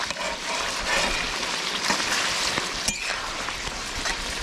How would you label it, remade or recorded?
recorded